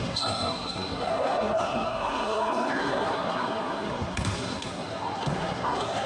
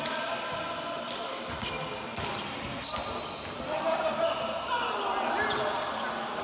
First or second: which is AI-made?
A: first